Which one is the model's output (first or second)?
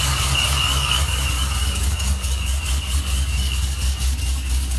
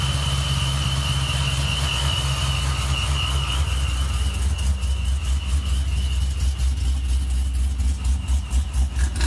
first